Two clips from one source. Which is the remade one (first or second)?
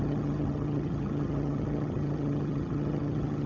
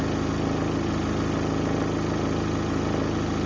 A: first